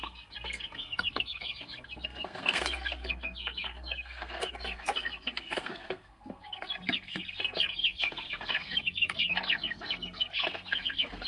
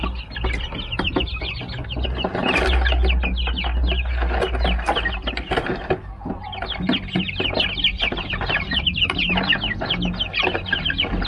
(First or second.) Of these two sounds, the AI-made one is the first